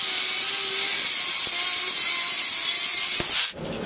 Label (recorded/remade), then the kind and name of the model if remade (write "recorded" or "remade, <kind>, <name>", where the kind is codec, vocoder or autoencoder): recorded